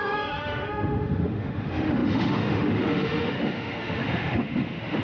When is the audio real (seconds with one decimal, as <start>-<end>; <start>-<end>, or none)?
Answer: none